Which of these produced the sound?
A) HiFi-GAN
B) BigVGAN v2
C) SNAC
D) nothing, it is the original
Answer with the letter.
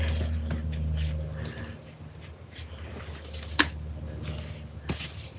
D